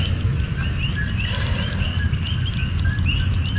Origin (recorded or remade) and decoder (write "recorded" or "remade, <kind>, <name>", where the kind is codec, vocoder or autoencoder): recorded